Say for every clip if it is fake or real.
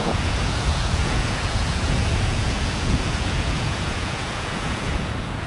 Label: fake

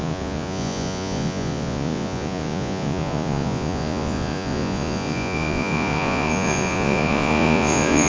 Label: fake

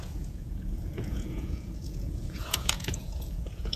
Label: fake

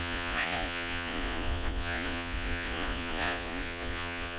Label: fake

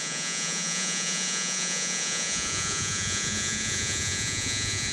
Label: fake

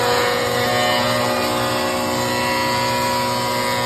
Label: real